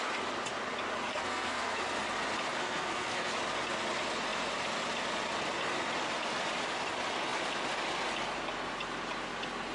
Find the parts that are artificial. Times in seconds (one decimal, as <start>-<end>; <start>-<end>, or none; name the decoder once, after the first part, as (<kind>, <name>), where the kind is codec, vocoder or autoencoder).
1.1-1.8 (codec, SNAC); 2.6-3.3